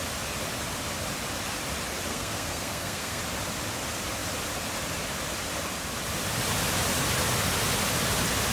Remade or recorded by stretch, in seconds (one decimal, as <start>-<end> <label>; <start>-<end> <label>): 0.0-2.1 recorded; 2.1-3.2 remade; 3.2-8.5 recorded